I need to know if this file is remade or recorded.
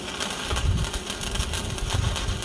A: recorded